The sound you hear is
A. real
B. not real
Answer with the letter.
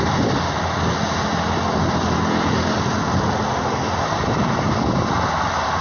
A